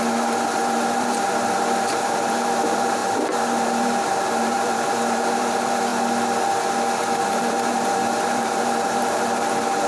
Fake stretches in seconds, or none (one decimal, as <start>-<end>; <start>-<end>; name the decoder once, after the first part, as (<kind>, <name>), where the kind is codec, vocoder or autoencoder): 0.0-5.9 (vocoder, BigVGAN v2); 7.3-9.9